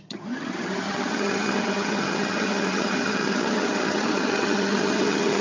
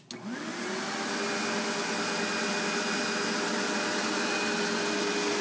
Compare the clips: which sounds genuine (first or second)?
second